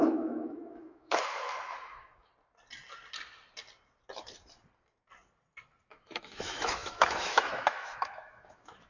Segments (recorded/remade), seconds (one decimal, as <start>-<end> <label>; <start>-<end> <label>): 0.0-2.3 remade; 2.3-5.9 recorded; 5.9-8.9 remade